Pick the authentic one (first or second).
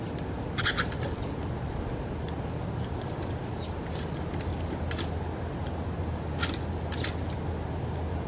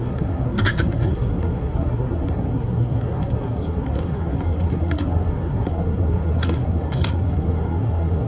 first